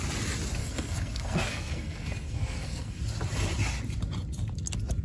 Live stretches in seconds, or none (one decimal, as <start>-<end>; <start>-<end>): 0.0-0.6; 3.0-5.0